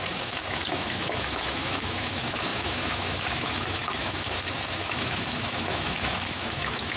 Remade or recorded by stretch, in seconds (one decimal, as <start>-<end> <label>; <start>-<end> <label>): 0.0-7.0 remade